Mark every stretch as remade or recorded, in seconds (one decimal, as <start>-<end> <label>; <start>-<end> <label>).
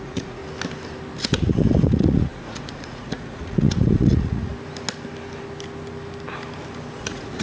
0.0-0.4 remade; 0.4-1.2 recorded; 1.2-4.5 remade; 4.5-7.0 recorded; 7.0-7.4 remade